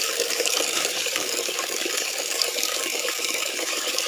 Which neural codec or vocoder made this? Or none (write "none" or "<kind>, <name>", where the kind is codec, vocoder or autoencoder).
codec, DAC